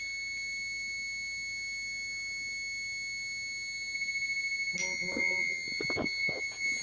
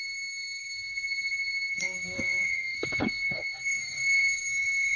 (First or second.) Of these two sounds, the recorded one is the first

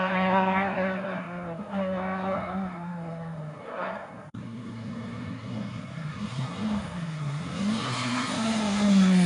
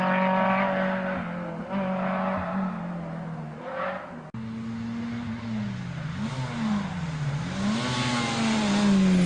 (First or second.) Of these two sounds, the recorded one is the second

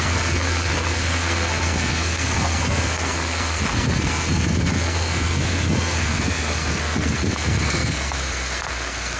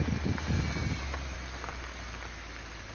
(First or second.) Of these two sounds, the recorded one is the second